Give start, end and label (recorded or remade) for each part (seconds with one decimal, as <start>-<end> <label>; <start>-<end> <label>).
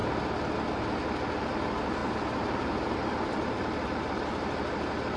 0.0-2.0 recorded; 2.0-5.2 remade